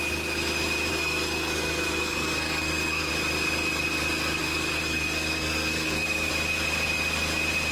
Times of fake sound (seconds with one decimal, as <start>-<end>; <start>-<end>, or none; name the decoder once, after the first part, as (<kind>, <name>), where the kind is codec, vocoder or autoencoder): 0.9-3.1 (codec, SNAC); 4.4-6.3